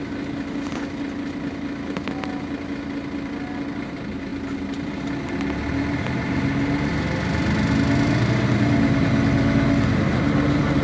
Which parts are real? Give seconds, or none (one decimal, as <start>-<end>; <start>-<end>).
0.0-10.8